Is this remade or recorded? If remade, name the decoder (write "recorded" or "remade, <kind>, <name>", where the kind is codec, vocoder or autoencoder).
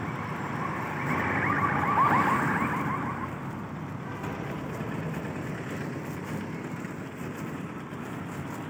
recorded